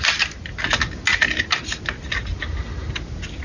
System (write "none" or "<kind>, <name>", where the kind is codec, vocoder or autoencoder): none